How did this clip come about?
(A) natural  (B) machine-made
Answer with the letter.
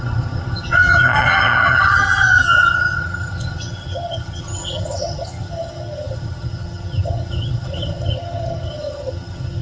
B